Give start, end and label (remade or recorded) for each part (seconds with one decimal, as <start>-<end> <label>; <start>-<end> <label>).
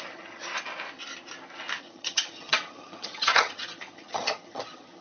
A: 0.0-0.5 remade; 0.5-1.8 recorded; 1.8-5.0 remade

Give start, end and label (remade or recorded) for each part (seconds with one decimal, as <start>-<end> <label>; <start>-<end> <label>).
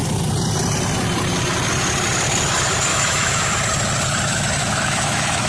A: 0.0-2.9 recorded; 2.9-3.5 remade; 3.5-4.6 recorded; 4.6-5.5 remade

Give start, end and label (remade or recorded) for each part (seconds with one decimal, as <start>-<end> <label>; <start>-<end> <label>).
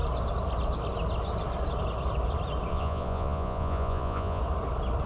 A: 0.0-2.7 recorded; 2.7-4.4 remade; 4.4-5.1 recorded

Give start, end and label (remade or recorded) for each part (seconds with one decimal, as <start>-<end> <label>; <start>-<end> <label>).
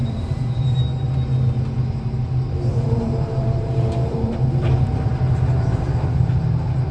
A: 0.0-0.8 remade; 0.8-2.7 recorded; 2.7-5.1 remade; 5.1-6.9 recorded